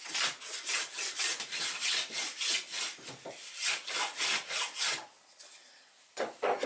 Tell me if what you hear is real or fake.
real